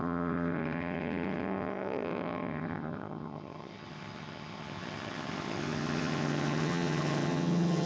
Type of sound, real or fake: fake